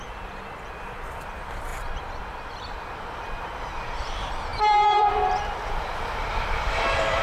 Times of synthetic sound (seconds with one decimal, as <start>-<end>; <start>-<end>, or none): 0.0-7.2

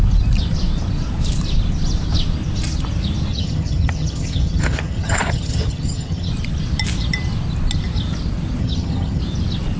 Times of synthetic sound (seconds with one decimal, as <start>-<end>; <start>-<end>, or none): 3.3-6.3; 8.6-9.2